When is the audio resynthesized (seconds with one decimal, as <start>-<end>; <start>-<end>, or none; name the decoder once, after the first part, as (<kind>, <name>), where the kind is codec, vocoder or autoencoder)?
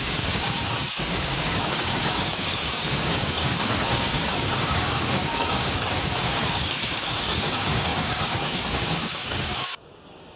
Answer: 0.0-10.4 (codec, DAC)